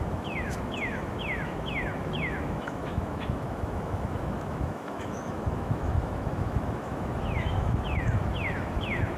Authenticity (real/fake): fake